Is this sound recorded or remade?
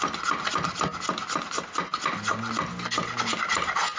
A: recorded